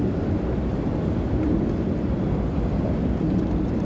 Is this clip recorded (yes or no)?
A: yes